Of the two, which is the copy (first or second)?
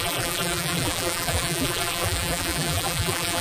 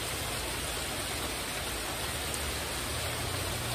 first